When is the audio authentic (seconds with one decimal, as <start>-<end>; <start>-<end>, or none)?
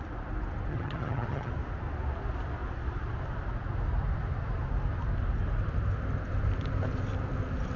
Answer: 0.0-0.7; 1.5-7.8